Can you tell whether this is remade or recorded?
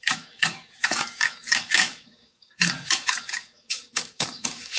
remade